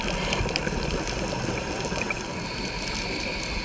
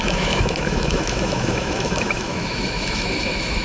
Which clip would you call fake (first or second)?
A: second